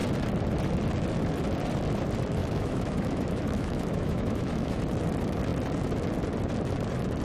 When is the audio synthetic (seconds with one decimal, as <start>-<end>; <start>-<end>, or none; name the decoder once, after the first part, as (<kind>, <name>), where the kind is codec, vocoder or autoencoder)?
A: 2.4-4.8 (autoencoder, DAC-VAE)